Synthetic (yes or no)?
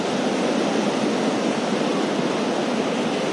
no